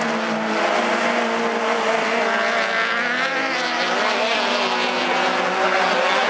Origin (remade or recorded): recorded